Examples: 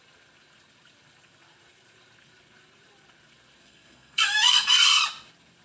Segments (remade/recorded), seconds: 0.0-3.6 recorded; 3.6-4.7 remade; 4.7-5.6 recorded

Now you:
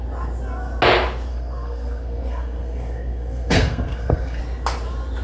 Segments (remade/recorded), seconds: 0.0-1.3 recorded; 1.3-4.4 remade; 4.4-5.2 recorded

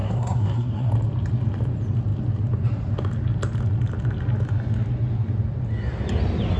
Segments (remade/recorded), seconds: 0.0-0.9 remade; 0.9-6.6 recorded

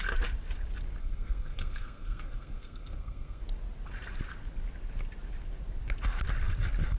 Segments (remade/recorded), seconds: 0.0-1.0 recorded; 1.0-3.4 remade; 3.4-7.0 recorded